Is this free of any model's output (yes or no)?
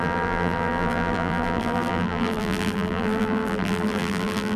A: no